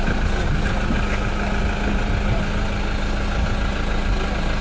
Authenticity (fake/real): real